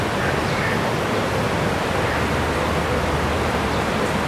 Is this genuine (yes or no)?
yes